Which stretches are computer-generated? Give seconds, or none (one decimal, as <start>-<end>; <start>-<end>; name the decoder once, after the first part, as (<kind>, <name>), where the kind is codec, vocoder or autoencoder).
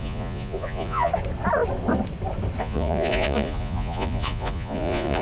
0.0-1.1 (vocoder, Vocos); 2.6-5.2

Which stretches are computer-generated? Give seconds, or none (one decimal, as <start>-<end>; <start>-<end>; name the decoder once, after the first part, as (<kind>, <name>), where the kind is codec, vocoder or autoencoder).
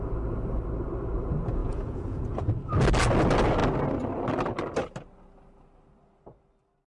1.6-2.4 (vocoder, Vocos)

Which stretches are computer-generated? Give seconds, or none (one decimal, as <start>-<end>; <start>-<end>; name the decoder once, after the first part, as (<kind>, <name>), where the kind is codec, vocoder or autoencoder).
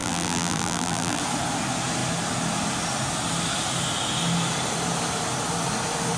0.0-1.2 (vocoder, BigVGAN v2)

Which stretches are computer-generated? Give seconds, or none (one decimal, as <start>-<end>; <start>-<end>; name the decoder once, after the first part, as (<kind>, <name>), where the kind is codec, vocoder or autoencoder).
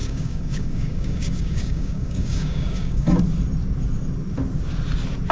0.0-3.2 (codec, DAC)